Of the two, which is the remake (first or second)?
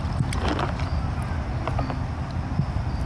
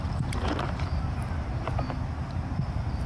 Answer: second